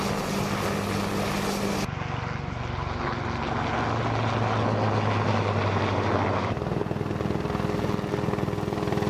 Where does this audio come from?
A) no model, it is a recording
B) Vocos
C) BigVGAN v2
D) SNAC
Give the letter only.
A